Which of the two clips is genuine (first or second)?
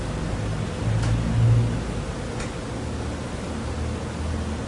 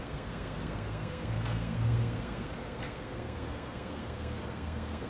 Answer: first